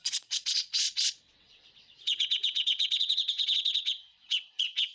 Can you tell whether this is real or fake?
fake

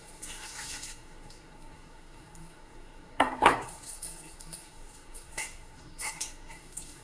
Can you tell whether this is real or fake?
fake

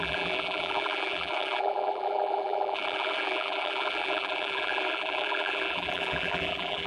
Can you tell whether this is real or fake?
fake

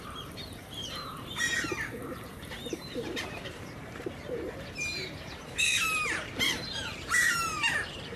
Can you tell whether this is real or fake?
fake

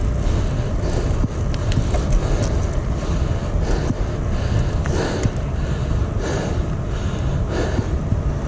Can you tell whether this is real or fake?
real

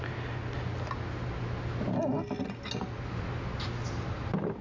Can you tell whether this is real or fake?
real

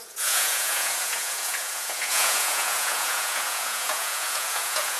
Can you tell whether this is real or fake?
fake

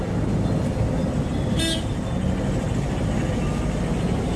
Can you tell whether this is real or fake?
real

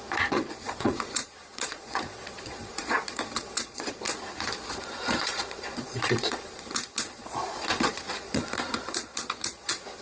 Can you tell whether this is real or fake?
fake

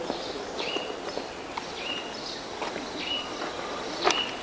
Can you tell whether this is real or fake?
real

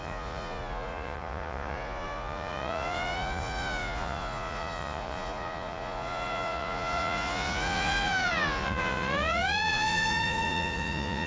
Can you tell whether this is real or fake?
fake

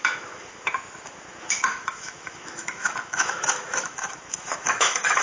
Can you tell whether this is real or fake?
fake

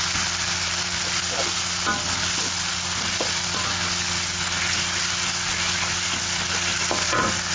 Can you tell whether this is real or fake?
real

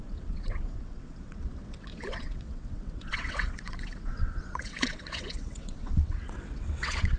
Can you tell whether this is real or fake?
fake